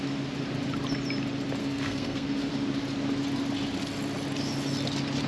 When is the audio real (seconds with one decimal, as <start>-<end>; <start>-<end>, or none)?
0.0-1.6; 2.5-5.3